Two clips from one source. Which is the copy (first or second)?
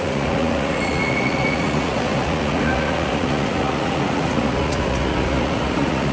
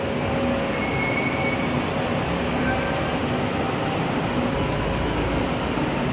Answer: first